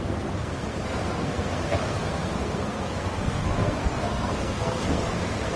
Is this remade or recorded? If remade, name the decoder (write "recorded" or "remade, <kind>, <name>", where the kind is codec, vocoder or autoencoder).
remade, codec, SNAC